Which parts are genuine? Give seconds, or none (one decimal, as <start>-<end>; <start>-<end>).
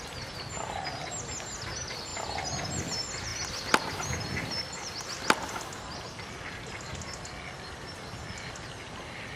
0.0-9.4